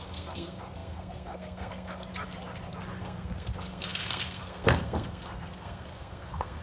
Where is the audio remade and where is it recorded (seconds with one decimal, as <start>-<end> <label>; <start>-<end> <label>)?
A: 0.0-2.1 remade; 2.1-3.0 recorded; 3.0-6.6 remade